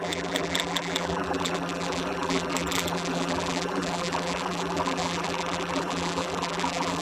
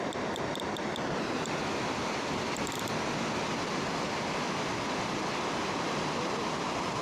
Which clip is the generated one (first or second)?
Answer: first